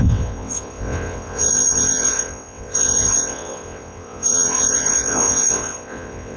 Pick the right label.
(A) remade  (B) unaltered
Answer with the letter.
A